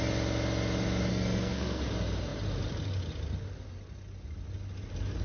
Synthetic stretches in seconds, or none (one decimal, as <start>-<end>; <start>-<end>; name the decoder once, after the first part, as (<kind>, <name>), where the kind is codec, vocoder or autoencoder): 1.1-1.8 (codec, SNAC)